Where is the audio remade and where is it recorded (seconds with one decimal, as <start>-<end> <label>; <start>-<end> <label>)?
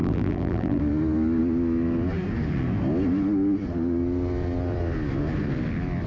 0.0-0.8 remade; 0.8-6.1 recorded